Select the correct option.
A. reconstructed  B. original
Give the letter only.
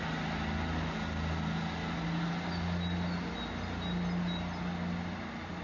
B